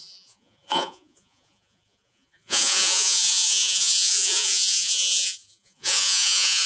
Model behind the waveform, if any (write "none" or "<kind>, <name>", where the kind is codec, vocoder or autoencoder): vocoder, Vocos